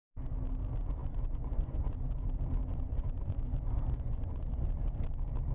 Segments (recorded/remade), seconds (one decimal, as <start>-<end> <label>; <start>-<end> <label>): 0.0-1.0 recorded; 1.0-2.2 remade; 2.2-2.7 recorded; 2.7-4.5 remade; 4.5-5.5 recorded

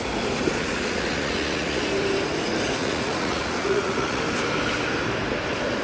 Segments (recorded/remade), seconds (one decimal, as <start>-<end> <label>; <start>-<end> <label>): 0.0-0.6 recorded; 0.6-1.8 remade; 1.8-2.8 recorded; 2.8-4.2 remade; 4.2-5.8 recorded